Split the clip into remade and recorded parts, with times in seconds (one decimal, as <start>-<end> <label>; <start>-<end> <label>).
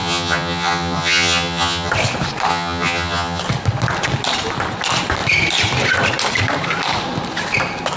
0.0-1.9 remade; 1.9-2.5 recorded; 2.5-3.4 remade; 3.4-8.0 recorded